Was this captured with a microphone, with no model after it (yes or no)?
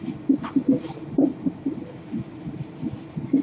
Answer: yes